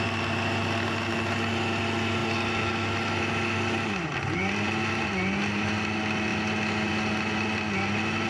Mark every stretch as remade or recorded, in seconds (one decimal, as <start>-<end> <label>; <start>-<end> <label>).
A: 0.0-8.3 recorded